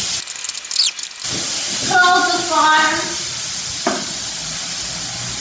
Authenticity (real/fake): real